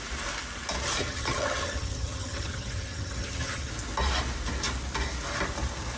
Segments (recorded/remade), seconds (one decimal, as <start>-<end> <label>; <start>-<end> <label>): 0.0-1.0 recorded; 1.0-3.7 remade; 3.7-6.0 recorded